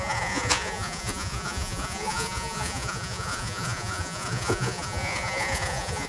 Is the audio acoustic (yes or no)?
no